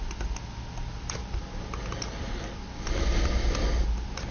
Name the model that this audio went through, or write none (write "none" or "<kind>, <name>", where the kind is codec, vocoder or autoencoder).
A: none